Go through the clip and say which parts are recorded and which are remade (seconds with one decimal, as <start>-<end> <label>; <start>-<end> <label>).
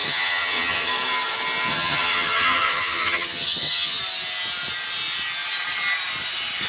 0.0-0.9 remade; 0.9-1.7 recorded; 1.7-4.0 remade; 4.0-6.7 recorded